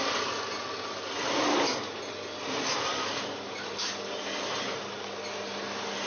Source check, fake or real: real